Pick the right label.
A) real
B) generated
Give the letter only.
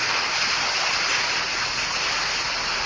A